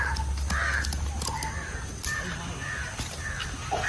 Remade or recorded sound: recorded